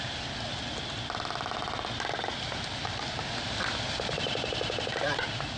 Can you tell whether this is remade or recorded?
recorded